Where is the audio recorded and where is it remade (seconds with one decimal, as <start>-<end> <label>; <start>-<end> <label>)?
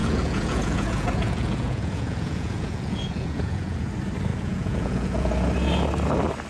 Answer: 0.0-3.9 remade; 3.9-4.3 recorded; 4.3-5.3 remade; 5.3-6.5 recorded